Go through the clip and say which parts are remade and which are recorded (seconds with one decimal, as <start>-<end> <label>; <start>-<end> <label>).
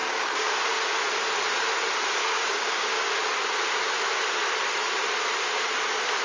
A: 0.0-0.5 remade; 0.5-2.2 recorded; 2.2-3.1 remade; 3.1-6.2 recorded